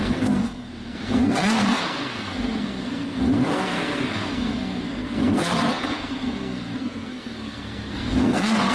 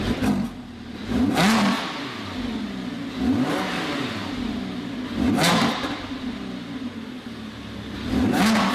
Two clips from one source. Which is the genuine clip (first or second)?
second